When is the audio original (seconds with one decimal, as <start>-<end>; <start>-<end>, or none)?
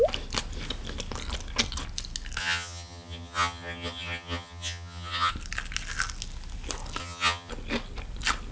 0.0-2.4; 5.3-7.0; 7.5-8.5